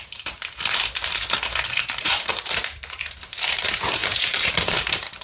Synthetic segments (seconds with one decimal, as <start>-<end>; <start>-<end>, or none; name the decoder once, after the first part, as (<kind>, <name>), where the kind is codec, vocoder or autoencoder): 0.0-0.4 (vocoder, BigVGAN v2); 1.7-5.2